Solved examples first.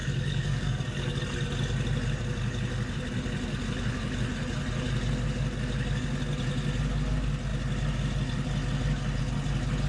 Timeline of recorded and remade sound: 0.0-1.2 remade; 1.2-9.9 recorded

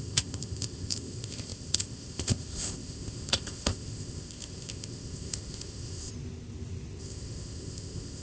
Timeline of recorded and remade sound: 0.0-6.1 remade; 6.1-7.0 recorded; 7.0-8.2 remade

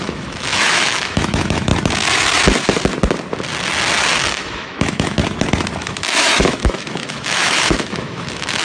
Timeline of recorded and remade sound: 0.0-1.7 remade; 1.7-4.2 recorded; 4.2-5.2 remade; 5.2-5.8 recorded; 5.8-8.6 remade

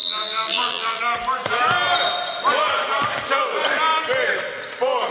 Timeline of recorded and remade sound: 0.0-1.0 remade; 1.0-5.1 recorded

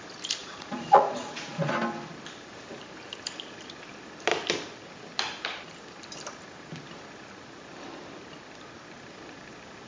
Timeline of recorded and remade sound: 0.0-0.4 recorded; 0.4-1.7 remade; 1.7-9.9 recorded